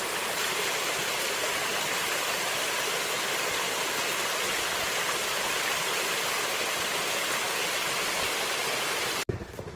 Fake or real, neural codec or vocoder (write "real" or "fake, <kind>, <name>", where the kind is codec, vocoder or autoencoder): fake, vocoder, BigVGAN v2